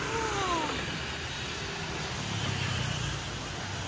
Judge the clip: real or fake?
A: real